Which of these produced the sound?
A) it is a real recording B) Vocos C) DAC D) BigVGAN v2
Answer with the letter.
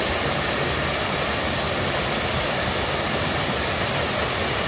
D